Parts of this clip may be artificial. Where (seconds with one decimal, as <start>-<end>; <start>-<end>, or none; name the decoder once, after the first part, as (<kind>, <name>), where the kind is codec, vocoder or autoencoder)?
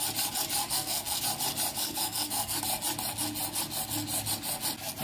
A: 0.6-1.2 (codec, SNAC); 1.8-2.6